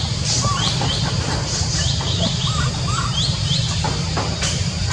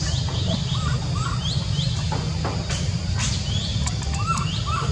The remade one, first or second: first